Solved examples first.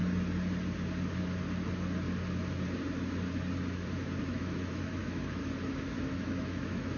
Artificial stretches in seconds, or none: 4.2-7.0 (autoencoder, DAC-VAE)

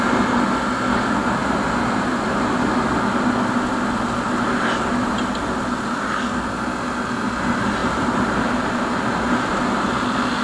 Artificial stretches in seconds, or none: 1.4-2.1 (vocoder, BigVGAN v2); 7.8-8.9

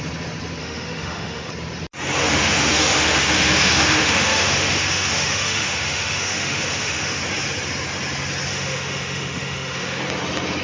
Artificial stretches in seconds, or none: 0.6-1.5 (autoencoder, DAC-VAE); 2.2-7.2; 8.5-10.0

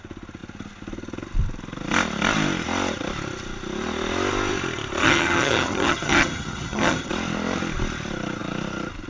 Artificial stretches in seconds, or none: 5.0-7.1 (vocoder, HiFi-GAN)

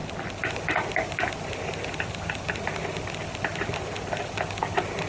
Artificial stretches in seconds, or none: none

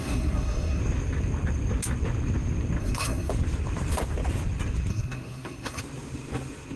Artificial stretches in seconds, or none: 0.0-0.8 (codec, SNAC); 2.8-3.3; 4.9-5.8

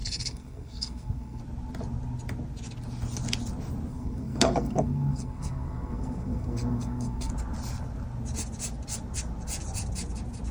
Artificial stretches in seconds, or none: 0.0-1.4 (codec, SNAC); 3.9-7.3

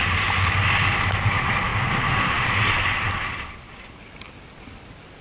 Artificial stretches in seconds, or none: 1.7-4.0 (vocoder, BigVGAN v2)